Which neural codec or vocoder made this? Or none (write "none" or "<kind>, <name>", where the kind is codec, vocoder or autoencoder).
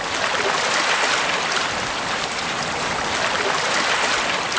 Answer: none